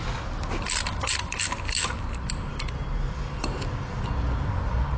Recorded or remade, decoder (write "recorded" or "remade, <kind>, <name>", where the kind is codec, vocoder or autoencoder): recorded